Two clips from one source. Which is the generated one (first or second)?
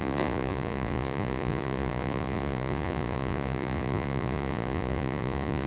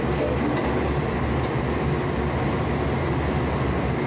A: first